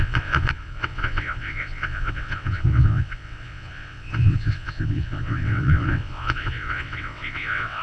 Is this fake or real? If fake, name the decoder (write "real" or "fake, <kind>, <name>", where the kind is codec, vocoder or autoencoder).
fake, vocoder, WaveNeXt